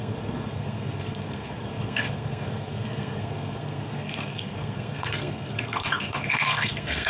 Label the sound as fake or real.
fake